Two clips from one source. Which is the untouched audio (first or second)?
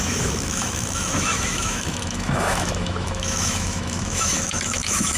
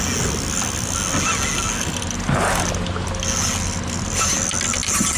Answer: second